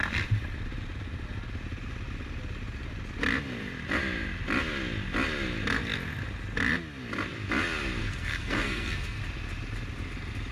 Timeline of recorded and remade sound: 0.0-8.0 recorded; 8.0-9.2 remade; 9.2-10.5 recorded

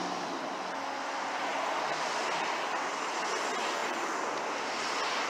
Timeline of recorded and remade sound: 0.0-0.6 remade; 0.6-3.8 recorded; 3.8-4.5 remade; 4.5-5.3 recorded